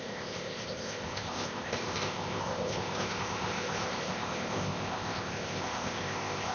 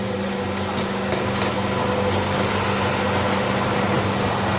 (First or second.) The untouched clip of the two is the second